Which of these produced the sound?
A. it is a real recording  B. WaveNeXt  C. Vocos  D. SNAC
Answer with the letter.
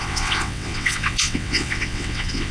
B